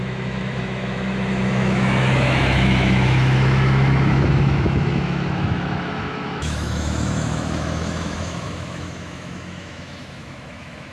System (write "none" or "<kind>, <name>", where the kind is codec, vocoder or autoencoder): autoencoder, DAC-VAE